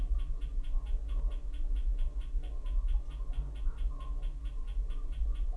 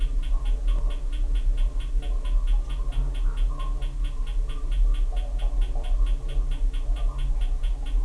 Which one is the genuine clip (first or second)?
second